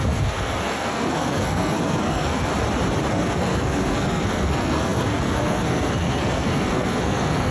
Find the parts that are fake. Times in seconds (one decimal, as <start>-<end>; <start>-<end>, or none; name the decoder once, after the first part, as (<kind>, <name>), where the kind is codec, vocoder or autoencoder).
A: 0.0-2.5 (codec, SNAC); 3.1-7.5